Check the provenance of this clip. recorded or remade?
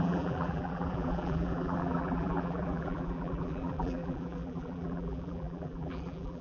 remade